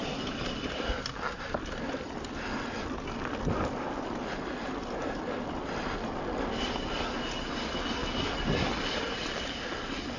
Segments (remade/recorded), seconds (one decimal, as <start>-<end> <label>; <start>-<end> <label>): 0.0-1.9 remade; 1.9-10.2 recorded